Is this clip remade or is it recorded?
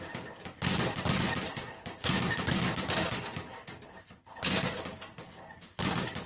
recorded